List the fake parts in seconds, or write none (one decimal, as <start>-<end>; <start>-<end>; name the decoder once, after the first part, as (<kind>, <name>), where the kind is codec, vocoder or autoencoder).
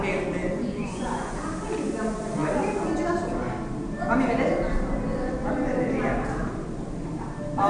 0.4-1.3 (vocoder, Vocos)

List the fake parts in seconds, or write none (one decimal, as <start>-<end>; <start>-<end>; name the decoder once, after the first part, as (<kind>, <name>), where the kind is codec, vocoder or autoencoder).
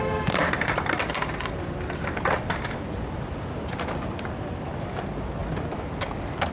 none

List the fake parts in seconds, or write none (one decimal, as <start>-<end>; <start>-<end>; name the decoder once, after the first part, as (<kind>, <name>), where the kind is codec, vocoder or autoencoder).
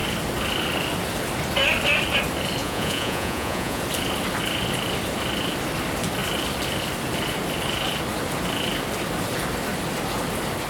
2.6-3.8 (vocoder, Vocos)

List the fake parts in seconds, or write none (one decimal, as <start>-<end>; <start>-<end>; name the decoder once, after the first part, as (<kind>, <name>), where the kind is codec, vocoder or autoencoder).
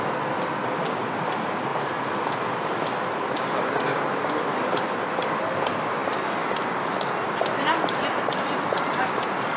none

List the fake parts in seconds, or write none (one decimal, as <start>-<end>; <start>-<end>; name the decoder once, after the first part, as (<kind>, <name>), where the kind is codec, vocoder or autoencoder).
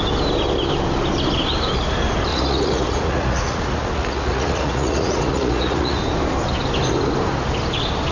2.3-6.0 (vocoder, Vocos)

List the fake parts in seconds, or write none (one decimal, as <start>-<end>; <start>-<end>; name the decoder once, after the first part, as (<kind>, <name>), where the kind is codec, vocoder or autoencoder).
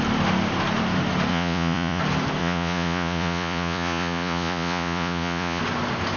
1.3-2.0 (vocoder, Vocos); 2.4-5.6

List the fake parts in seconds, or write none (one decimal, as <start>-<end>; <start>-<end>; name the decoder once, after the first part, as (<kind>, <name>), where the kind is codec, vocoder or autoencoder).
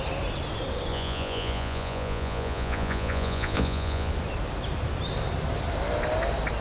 0.9-4.1 (vocoder, Vocos)